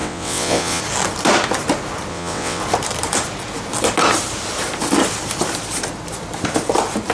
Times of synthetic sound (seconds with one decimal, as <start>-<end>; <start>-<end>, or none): 0.0-0.8; 2.1-2.6